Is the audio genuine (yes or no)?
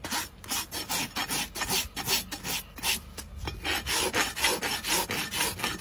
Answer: yes